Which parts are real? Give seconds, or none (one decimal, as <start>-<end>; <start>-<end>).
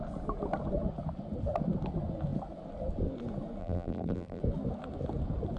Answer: 0.0-3.6; 4.4-5.6